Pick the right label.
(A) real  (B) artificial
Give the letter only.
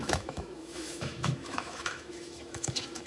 B